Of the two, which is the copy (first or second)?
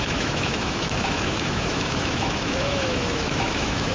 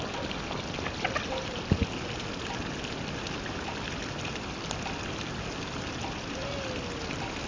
first